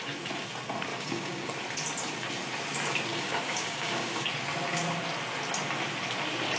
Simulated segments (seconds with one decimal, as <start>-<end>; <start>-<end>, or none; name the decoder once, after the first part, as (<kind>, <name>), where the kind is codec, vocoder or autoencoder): 0.9-1.5 (codec, DAC); 3.1-4.3